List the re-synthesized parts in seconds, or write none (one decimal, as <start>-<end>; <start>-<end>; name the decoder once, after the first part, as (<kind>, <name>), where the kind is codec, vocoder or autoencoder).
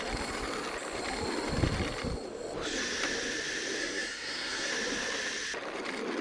3.8-4.7 (codec, SNAC)